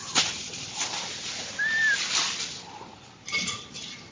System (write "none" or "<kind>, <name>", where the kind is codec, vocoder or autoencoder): none